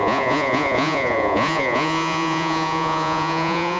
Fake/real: fake